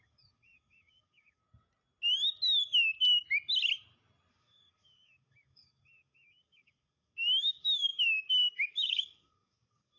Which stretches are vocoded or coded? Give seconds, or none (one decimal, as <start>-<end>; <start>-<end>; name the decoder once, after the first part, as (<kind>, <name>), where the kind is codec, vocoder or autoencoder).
0.0-1.4 (codec, DAC); 4.3-10.0